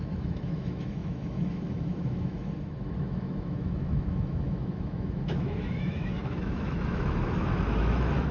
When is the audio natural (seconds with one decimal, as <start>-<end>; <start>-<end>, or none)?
none